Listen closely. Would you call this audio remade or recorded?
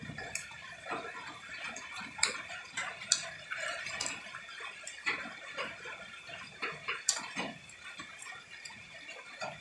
recorded